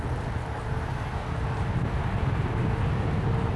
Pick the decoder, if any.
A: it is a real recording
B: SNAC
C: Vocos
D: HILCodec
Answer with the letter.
A